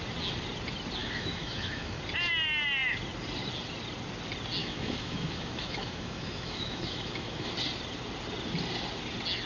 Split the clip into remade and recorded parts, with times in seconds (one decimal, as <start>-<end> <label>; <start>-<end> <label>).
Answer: 0.0-1.0 recorded; 1.0-2.0 remade; 2.0-4.6 recorded; 4.6-7.5 remade; 7.5-9.5 recorded